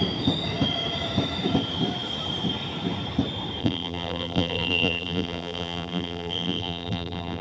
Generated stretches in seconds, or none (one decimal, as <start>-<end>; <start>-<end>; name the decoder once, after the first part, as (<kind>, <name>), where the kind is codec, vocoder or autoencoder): 3.6-7.4 (vocoder, BigVGAN v2)